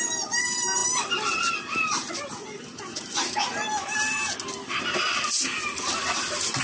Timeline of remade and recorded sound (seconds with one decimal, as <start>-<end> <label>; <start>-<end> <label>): 0.0-6.6 recorded